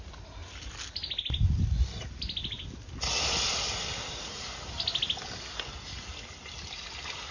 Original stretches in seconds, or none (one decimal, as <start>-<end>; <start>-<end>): 0.0-0.4; 2.6-7.3